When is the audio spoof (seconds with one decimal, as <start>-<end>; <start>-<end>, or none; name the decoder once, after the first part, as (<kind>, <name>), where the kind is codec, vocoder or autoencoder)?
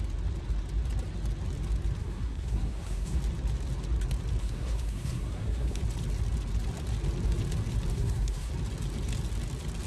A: 2.0-3.2 (codec, SNAC); 4.4-5.8; 7.9-8.5